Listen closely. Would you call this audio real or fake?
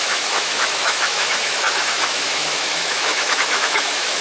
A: fake